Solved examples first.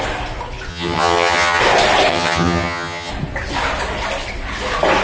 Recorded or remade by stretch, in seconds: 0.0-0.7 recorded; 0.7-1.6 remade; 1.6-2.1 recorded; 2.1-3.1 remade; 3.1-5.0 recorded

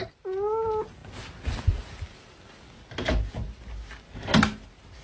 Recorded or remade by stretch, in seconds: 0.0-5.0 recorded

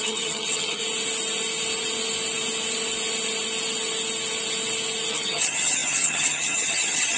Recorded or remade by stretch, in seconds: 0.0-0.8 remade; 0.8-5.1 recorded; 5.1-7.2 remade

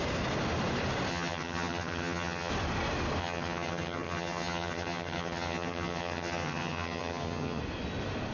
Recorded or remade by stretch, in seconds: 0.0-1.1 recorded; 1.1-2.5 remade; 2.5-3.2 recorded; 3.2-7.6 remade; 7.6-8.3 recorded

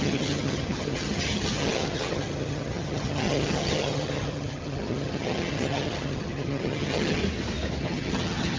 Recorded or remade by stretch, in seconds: 0.0-7.2 remade; 7.2-7.8 recorded; 7.8-8.6 remade

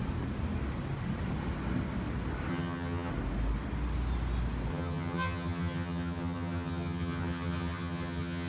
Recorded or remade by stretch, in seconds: 0.0-2.5 recorded; 2.5-3.1 remade; 3.1-4.7 recorded; 4.7-8.5 remade